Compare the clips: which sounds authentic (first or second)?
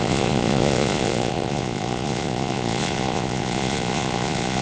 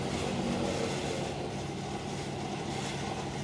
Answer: second